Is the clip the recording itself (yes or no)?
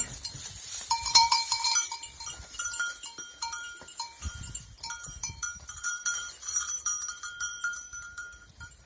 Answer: no